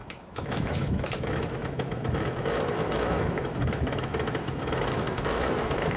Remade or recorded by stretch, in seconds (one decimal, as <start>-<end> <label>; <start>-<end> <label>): 0.0-6.0 remade